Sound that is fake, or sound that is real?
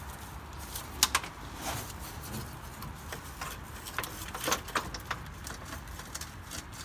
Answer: real